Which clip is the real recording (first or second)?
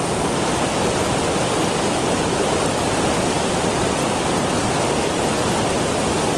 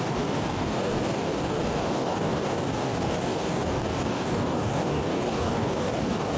first